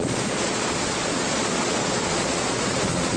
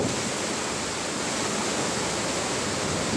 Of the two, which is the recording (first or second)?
second